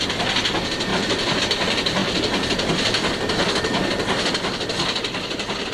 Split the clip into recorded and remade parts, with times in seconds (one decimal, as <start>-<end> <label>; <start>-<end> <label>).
0.0-0.9 recorded; 0.9-1.4 remade; 1.4-5.7 recorded